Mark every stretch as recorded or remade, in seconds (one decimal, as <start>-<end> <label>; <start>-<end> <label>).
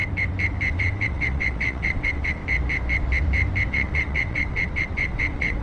0.0-0.7 recorded; 0.7-2.4 remade; 2.4-3.7 recorded; 3.7-5.6 remade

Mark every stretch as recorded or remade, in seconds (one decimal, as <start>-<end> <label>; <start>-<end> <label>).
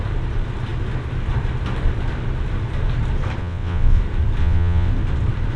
0.0-3.4 recorded; 3.4-4.0 remade; 4.0-4.4 recorded; 4.4-4.9 remade; 4.9-5.6 recorded